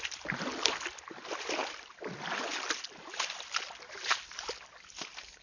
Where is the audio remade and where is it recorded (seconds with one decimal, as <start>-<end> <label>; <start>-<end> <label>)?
0.0-5.4 recorded